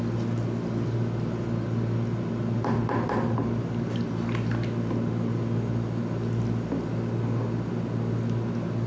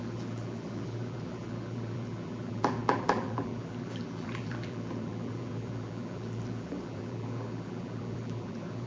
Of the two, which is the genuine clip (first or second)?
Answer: first